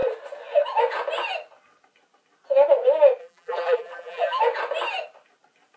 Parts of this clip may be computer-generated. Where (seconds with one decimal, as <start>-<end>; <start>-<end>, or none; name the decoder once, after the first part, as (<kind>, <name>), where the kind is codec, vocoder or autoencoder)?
3.2-4.4 (vocoder, BigVGAN v2)